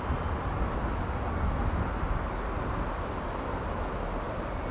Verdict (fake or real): real